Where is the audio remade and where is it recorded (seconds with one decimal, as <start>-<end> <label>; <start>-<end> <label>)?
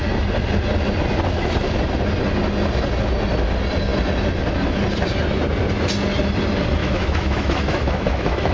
0.0-6.8 recorded; 6.8-8.5 remade